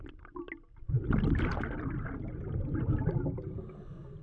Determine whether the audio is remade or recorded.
recorded